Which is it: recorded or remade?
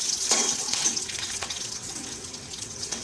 remade